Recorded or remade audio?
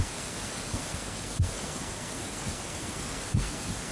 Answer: remade